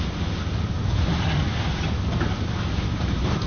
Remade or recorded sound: recorded